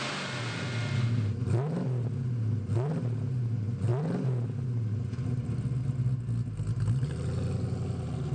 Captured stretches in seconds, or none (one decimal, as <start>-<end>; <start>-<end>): 0.0-8.3

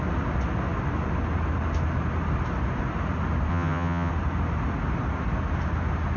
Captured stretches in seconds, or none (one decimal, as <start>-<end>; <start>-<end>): 0.0-3.5; 4.1-6.2

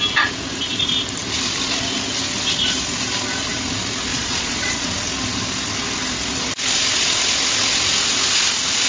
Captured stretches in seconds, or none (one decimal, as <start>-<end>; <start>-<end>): 0.0-4.1; 4.9-8.9